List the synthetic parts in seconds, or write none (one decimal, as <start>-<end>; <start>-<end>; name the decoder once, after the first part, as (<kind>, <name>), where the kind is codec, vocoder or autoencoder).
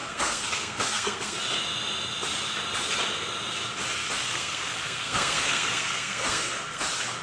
0.0-1.4 (codec, SNAC); 4.3-6.8